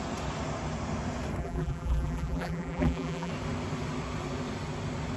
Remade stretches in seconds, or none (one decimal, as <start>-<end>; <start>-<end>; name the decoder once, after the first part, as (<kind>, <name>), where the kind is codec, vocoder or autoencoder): 1.4-3.3 (vocoder, BigVGAN v2)